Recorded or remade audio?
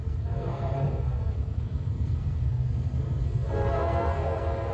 remade